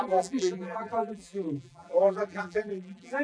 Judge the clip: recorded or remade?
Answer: remade